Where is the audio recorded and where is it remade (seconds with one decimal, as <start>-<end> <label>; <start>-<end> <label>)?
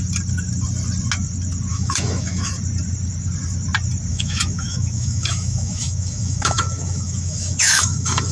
0.0-1.7 recorded; 1.7-2.5 remade; 2.5-4.1 recorded; 4.1-8.3 remade